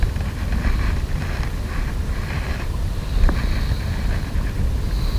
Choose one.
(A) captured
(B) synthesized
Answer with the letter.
A